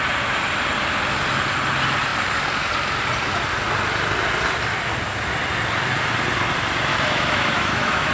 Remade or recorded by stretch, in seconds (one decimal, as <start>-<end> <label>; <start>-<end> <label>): 0.0-6.9 recorded; 6.9-8.1 remade